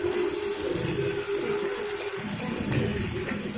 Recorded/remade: recorded